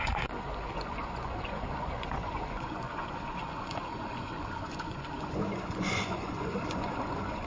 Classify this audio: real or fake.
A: fake